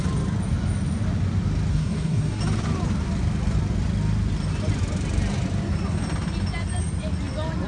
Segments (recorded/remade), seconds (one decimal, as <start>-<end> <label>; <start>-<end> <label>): 0.0-1.7 recorded; 1.7-2.4 remade; 2.4-7.7 recorded